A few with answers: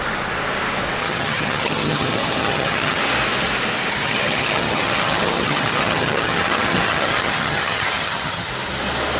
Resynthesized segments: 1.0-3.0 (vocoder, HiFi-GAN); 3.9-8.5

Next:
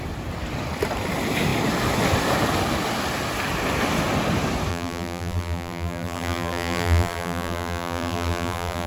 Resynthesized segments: 4.7-8.9 (vocoder, BigVGAN v2)

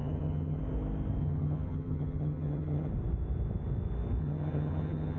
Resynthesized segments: 0.0-0.6 (vocoder, HiFi-GAN); 1.2-2.9; 4.2-5.2

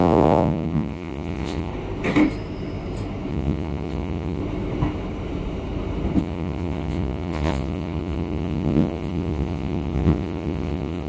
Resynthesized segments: 0.0-1.7 (vocoder, Vocos); 3.3-4.4; 6.2-11.1

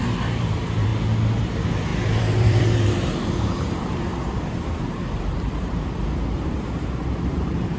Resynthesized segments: 0.0-0.9 (vocoder, BigVGAN v2); 1.4-4.1; 4.9-7.8

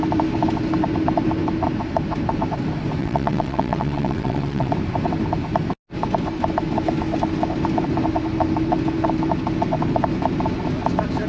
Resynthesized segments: 3.0-4.7 (vocoder, WaveNeXt)